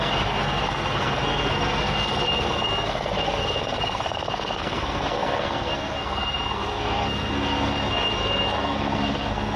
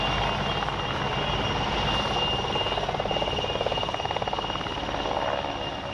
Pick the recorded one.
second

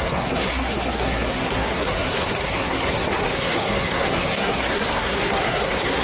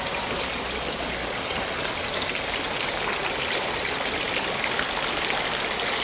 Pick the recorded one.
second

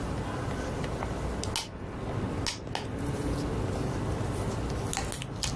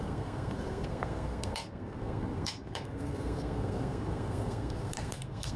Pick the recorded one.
first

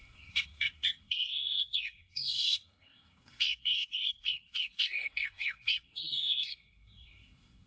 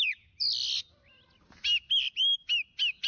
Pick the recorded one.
second